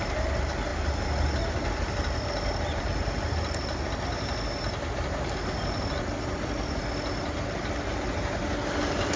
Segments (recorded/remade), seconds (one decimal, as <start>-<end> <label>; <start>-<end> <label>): 0.0-9.2 recorded